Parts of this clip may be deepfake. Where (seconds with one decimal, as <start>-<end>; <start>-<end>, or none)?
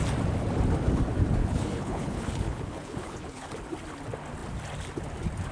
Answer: 1.4-3.5